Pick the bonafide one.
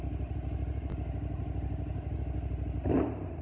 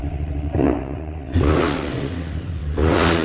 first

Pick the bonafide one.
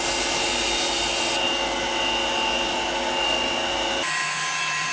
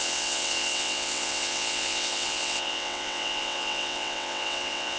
first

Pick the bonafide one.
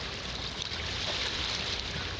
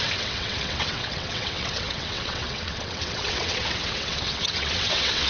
first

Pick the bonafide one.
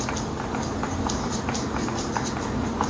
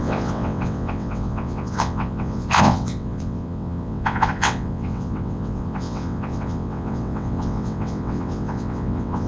first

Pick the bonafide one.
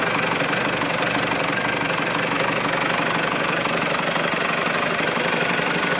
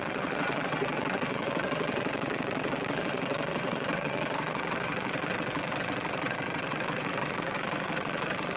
first